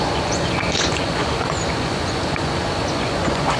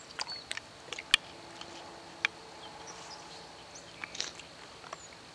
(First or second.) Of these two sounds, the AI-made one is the first